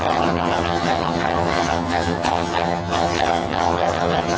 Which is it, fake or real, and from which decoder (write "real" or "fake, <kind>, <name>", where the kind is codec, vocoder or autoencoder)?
fake, vocoder, HiFi-GAN